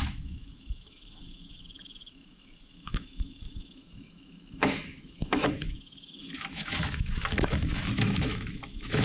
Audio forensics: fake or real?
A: fake